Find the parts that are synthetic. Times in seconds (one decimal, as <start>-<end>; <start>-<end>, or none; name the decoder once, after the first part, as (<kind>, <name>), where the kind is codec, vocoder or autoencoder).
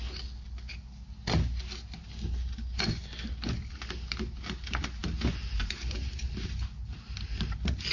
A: none